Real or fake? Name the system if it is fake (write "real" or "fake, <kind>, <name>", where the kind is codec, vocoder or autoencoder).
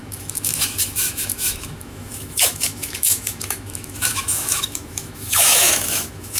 fake, autoencoder, DAC-VAE